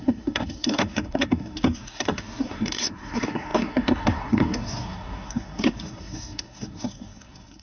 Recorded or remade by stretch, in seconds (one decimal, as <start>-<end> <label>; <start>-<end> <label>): 0.0-7.6 remade